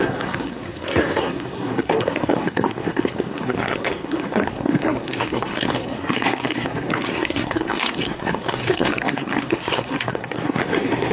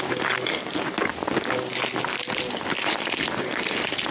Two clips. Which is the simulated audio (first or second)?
first